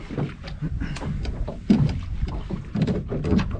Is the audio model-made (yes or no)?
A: no